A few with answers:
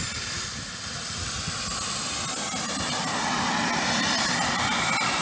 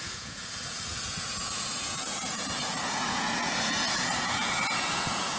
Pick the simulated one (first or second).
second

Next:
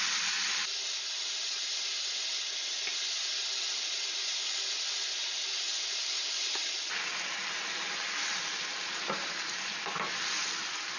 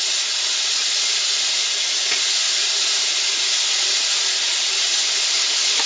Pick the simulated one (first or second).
second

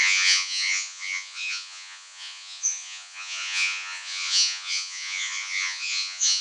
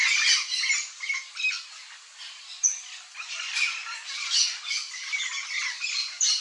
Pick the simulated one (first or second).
first